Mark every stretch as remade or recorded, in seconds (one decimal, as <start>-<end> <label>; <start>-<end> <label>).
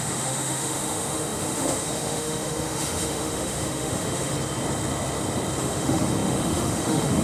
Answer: 0.0-4.3 remade; 4.3-5.6 recorded; 5.6-7.2 remade